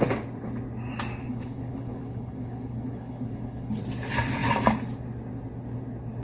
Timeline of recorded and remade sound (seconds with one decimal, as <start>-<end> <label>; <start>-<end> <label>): 0.0-1.2 recorded; 1.2-3.8 remade; 3.8-6.2 recorded